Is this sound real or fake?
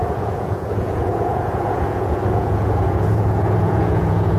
fake